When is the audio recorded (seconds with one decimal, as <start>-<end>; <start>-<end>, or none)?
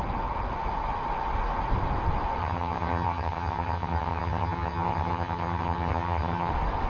0.0-2.4; 6.5-6.9